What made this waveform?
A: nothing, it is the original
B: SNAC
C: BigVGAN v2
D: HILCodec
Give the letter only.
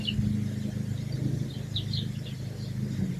A